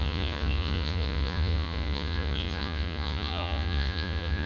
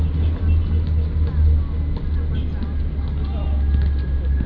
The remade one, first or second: first